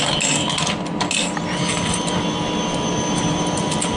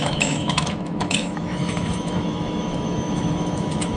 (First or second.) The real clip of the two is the first